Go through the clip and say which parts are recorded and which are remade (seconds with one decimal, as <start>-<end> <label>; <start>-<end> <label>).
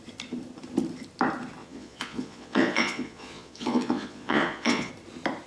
0.0-1.6 recorded; 1.6-4.9 remade; 4.9-5.5 recorded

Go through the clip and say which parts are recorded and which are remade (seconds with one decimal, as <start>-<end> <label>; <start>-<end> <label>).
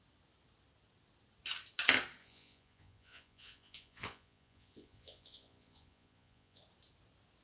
0.0-2.2 recorded; 2.2-6.6 remade; 6.6-7.4 recorded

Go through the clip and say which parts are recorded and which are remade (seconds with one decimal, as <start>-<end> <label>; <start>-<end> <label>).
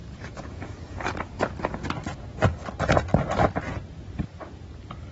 0.0-1.1 remade; 1.1-5.1 recorded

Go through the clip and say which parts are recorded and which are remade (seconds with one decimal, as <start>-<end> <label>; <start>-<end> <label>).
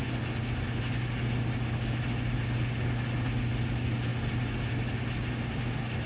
0.0-6.1 recorded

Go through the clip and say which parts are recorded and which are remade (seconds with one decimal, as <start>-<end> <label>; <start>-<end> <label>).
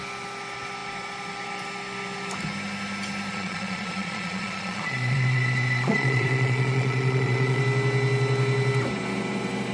0.0-3.3 recorded; 3.3-7.6 remade; 7.6-9.7 recorded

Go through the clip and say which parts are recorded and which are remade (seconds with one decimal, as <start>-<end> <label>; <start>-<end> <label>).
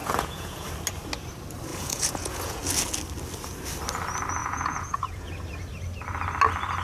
0.0-0.7 remade; 0.7-1.7 recorded; 1.7-2.6 remade; 2.6-4.4 recorded; 4.4-5.3 remade; 5.3-6.8 recorded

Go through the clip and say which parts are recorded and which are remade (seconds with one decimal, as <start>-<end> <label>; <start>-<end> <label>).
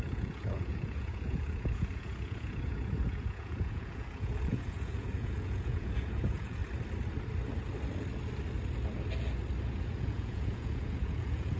0.0-6.6 remade; 6.6-9.7 recorded; 9.7-11.6 remade